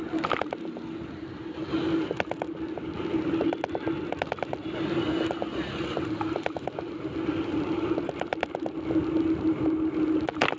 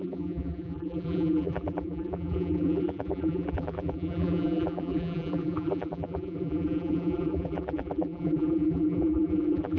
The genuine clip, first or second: first